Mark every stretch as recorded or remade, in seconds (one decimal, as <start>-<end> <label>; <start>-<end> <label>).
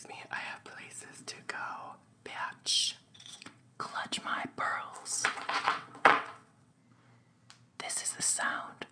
0.0-6.8 remade; 6.8-8.1 recorded; 8.1-8.9 remade